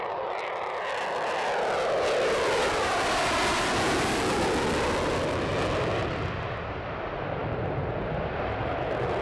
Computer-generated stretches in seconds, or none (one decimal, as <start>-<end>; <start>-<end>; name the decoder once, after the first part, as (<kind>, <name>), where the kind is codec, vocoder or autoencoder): none